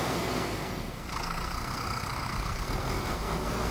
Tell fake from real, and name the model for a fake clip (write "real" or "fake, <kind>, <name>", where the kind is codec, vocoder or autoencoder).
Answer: fake, codec, SNAC